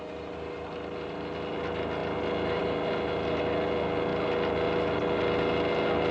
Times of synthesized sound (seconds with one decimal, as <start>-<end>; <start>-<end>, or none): none